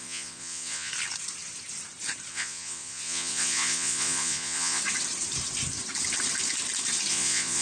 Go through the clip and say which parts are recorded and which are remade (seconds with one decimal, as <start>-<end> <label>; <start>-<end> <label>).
0.0-0.9 remade; 0.9-2.3 recorded; 2.3-4.8 remade; 4.8-7.1 recorded; 7.1-7.6 remade